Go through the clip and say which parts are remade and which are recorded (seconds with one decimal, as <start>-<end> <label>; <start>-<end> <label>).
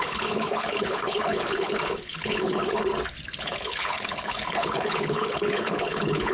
0.0-2.9 remade; 2.9-3.4 recorded; 3.4-6.3 remade